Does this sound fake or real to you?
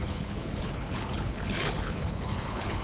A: fake